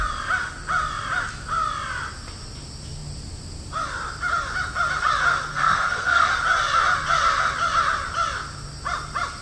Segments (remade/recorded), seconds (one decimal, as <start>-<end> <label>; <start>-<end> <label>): 0.0-5.5 recorded; 5.5-6.3 remade; 6.3-9.4 recorded